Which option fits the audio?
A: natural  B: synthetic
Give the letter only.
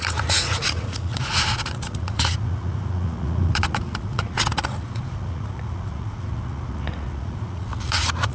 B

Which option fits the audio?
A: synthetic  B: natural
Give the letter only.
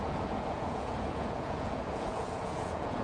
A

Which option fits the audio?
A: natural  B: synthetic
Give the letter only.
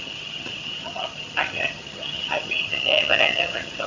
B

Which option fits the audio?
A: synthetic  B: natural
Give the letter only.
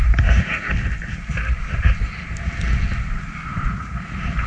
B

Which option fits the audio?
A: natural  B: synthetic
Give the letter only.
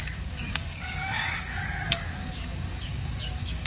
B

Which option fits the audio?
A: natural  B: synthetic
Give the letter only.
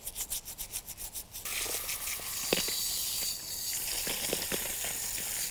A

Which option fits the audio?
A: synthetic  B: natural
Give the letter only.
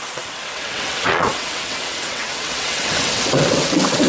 A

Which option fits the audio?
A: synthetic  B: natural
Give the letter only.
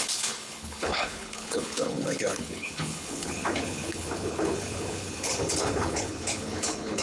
A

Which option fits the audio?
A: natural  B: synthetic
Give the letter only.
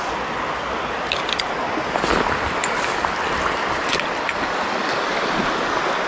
A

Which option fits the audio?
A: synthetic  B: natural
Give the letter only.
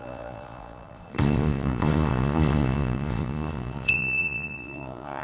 A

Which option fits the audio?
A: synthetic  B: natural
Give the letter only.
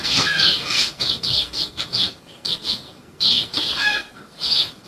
A